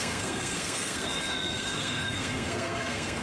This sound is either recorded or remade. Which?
remade